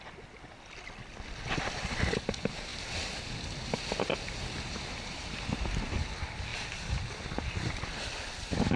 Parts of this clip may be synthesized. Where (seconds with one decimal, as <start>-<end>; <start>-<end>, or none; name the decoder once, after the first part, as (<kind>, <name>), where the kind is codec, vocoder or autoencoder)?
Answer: none